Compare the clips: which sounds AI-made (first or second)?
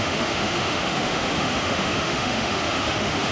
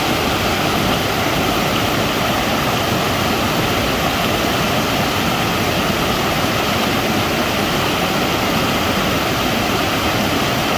first